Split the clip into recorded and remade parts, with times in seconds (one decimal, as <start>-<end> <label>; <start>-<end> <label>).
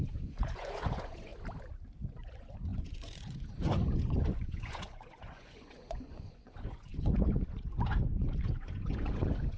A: 0.0-1.3 remade; 1.3-2.0 recorded; 2.0-9.6 remade